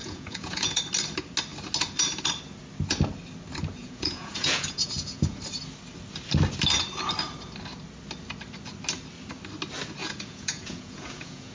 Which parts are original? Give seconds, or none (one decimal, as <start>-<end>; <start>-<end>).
0.8-3.8; 5.4-10.0